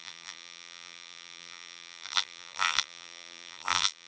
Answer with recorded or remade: remade